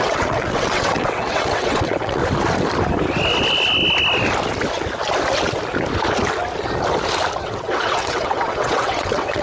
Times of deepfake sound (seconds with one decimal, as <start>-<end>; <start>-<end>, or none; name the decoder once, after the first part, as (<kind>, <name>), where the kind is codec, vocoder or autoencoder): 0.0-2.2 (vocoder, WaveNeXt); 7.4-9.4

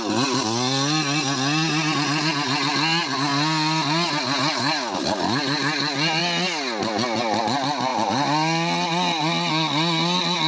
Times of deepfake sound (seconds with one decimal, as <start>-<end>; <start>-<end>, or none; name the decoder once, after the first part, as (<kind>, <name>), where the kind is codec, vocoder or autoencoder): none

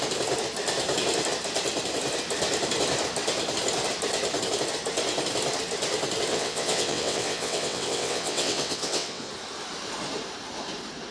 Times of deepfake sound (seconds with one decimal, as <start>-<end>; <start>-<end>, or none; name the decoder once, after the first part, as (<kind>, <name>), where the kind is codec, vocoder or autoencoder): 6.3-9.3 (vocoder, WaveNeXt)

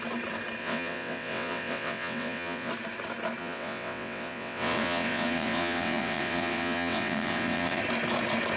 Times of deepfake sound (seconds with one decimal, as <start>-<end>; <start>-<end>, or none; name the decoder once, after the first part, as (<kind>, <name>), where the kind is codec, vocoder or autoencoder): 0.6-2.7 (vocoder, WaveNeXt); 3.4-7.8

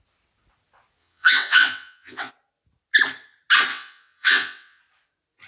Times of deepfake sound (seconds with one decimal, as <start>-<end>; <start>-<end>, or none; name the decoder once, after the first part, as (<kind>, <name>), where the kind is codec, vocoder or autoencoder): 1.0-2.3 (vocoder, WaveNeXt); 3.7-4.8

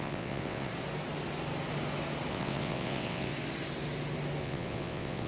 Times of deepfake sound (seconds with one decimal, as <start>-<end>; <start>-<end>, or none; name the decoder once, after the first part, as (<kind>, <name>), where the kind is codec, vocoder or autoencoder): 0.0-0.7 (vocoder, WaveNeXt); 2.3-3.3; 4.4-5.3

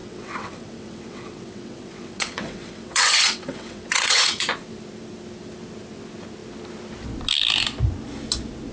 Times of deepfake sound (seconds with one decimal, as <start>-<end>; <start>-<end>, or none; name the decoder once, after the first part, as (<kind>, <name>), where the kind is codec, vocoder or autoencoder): 0.0-4.5 (vocoder, WaveNeXt)